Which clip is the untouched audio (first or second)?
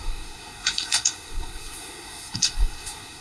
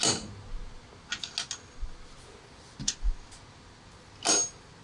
second